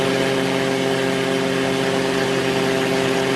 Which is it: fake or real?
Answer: real